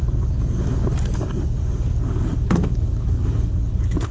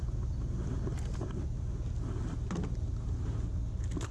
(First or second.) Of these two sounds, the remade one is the first